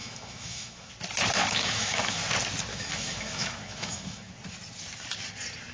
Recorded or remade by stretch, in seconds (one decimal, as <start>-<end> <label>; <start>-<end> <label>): 0.0-0.9 remade; 0.9-1.4 recorded; 1.4-2.2 remade; 2.2-2.7 recorded; 2.7-4.3 remade; 4.3-5.7 recorded